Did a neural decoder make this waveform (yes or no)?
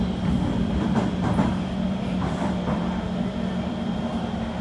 yes